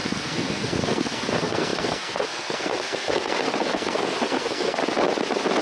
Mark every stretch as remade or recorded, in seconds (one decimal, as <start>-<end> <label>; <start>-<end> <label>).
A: 0.0-4.8 remade; 4.8-5.6 recorded